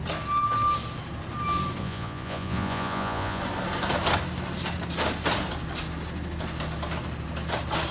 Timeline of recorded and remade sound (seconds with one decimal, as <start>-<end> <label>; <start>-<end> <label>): 0.0-1.8 recorded; 1.8-3.4 remade; 3.4-7.9 recorded